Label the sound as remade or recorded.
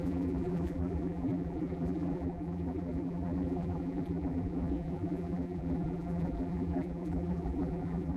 remade